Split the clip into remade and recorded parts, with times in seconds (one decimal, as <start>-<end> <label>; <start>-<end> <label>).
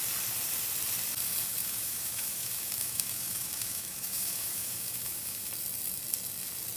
0.0-1.6 recorded; 1.6-5.5 remade; 5.5-6.8 recorded